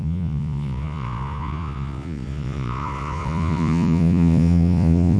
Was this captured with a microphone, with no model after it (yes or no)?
no